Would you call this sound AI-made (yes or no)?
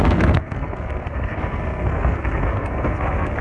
yes